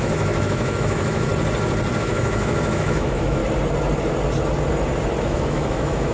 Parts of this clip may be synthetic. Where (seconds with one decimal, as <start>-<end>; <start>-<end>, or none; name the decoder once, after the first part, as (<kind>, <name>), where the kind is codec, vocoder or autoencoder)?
0.0-1.3 (autoencoder, DAC-VAE); 2.0-3.4; 5.2-6.1

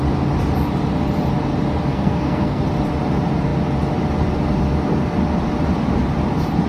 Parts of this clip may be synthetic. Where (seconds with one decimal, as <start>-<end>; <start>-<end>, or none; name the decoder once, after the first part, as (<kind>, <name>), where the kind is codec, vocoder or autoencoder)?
1.9-2.6 (codec, SNAC)

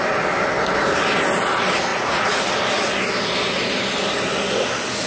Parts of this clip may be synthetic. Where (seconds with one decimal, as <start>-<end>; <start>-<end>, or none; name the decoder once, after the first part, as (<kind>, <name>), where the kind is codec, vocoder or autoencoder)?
1.9-2.4 (vocoder, Vocos)

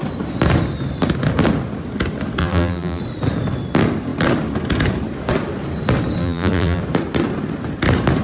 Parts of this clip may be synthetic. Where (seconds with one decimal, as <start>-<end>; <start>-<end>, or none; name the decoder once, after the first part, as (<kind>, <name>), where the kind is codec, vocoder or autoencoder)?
2.4-3.0 (vocoder, BigVGAN v2); 6.2-6.8

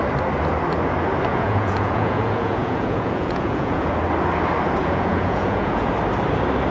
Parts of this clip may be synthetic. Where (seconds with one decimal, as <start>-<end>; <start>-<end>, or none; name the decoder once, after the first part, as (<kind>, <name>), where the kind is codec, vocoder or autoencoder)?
1.3-3.9 (vocoder, Vocos); 4.8-5.9

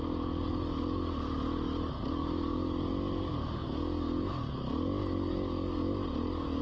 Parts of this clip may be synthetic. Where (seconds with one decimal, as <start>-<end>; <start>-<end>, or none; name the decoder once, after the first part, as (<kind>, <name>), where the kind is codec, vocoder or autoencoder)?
none